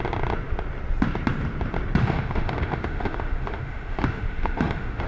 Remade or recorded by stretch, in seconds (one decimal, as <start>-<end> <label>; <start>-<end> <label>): 0.0-2.0 recorded; 2.0-5.1 remade